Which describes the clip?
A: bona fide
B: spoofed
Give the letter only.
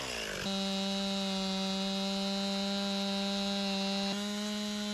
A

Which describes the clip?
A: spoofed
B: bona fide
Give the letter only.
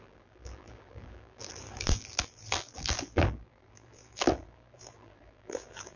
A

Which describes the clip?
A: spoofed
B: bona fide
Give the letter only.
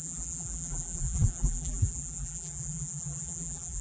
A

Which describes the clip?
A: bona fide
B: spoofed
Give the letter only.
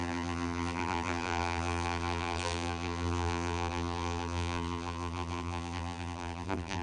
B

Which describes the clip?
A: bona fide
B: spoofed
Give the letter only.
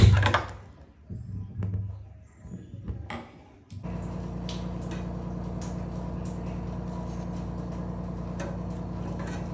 A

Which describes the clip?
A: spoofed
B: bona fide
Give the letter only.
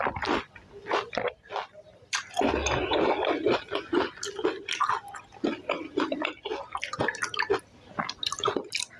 B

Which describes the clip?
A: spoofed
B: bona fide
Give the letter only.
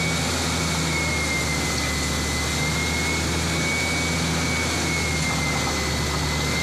B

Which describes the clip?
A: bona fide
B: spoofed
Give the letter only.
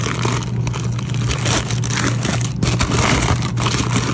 A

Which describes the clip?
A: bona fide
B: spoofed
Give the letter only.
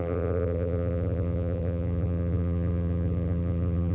B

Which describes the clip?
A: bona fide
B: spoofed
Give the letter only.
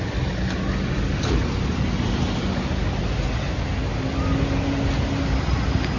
A